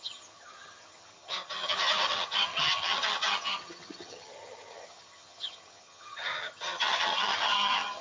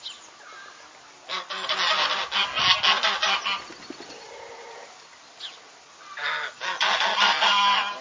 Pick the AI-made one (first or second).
first